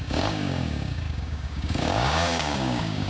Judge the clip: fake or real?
fake